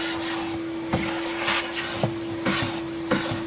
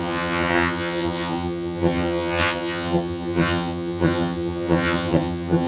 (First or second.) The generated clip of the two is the second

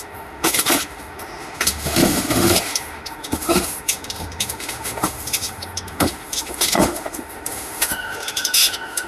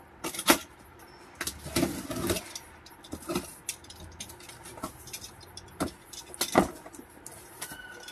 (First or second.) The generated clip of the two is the first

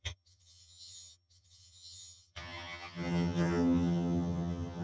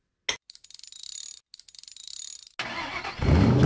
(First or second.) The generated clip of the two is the first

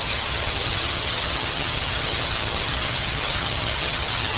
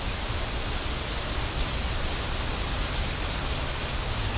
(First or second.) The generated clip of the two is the first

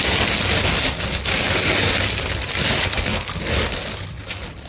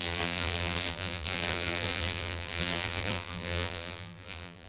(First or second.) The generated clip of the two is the second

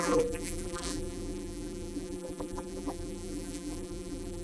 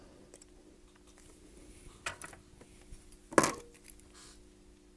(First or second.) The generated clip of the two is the first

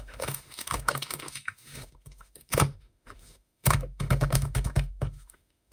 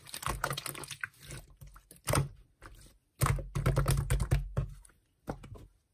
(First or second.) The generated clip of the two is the first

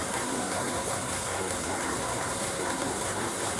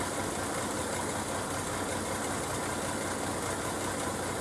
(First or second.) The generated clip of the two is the first